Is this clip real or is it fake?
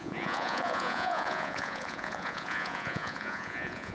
fake